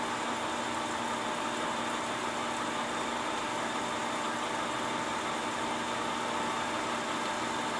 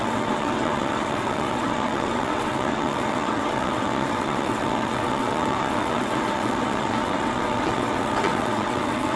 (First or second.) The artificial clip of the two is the second